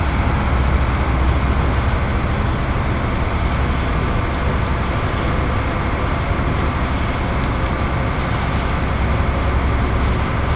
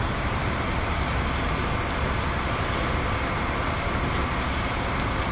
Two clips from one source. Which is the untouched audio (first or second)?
first